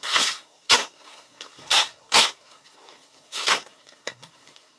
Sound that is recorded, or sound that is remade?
remade